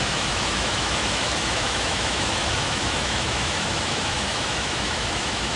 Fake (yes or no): yes